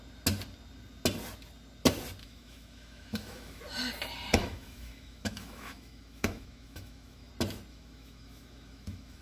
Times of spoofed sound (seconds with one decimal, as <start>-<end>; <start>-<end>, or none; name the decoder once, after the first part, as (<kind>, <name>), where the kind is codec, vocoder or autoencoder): 2.2-3.6 (autoencoder, DAC-VAE); 4.4-7.3; 7.7-9.2